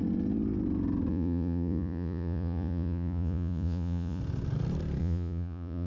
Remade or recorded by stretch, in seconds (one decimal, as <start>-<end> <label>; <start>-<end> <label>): 0.0-1.1 recorded; 1.1-4.2 remade; 4.2-5.0 recorded; 5.0-5.9 remade